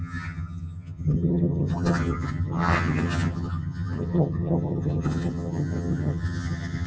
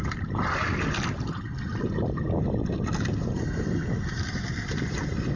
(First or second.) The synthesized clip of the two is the first